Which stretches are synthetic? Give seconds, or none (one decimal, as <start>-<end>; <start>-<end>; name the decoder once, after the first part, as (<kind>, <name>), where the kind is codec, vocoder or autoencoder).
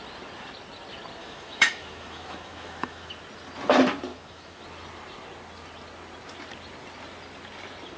1.2-3.1 (autoencoder, DAC-VAE); 4.1-4.6